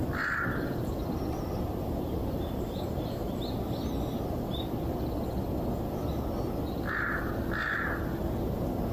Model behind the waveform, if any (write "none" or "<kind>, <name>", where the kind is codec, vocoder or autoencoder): none